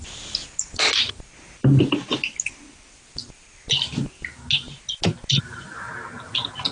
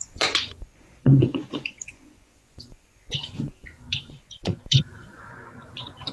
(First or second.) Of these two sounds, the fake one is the second